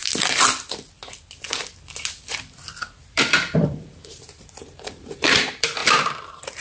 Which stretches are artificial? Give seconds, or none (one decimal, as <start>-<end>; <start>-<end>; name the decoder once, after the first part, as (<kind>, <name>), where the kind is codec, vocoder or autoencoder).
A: 3.0-6.6 (vocoder, BigVGAN v2)